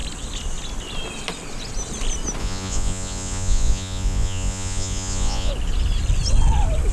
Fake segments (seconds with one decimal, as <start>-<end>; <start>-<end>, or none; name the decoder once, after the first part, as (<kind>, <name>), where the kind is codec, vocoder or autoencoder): 2.4-5.5 (vocoder, Vocos)